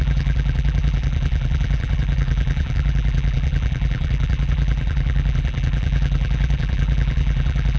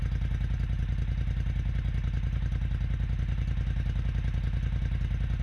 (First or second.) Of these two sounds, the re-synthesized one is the first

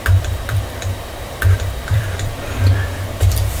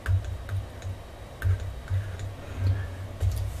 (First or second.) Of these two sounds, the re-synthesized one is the first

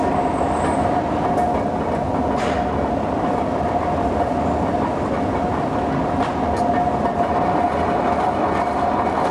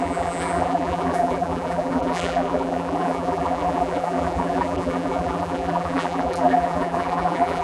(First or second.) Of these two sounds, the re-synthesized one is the second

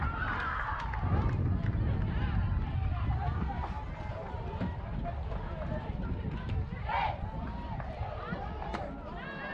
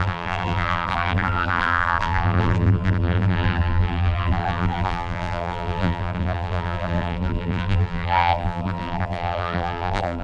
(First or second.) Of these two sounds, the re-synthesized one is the second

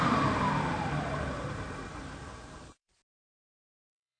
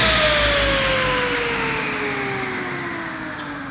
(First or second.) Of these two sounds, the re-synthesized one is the first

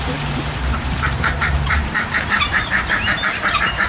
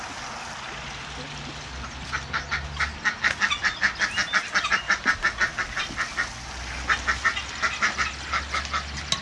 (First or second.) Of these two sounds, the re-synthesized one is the first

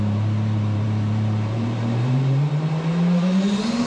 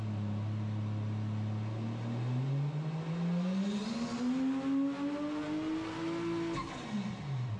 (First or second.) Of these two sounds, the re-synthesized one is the first